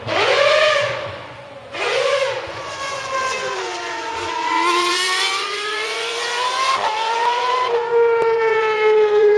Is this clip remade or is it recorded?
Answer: remade